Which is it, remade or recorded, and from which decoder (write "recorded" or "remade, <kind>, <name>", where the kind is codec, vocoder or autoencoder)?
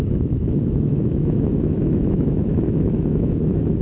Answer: remade, autoencoder, DAC-VAE